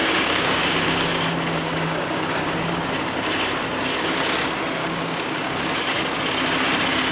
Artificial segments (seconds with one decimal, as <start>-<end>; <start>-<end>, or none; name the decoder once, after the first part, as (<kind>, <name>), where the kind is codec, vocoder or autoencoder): 0.0-2.8 (codec, DAC); 4.8-5.6